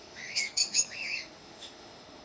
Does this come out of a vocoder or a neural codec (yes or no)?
yes